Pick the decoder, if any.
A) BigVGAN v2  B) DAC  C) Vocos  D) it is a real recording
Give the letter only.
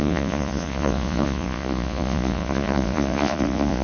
C